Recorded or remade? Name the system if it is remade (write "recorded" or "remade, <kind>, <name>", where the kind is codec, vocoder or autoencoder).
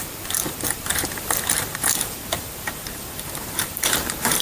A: remade, vocoder, BigVGAN v2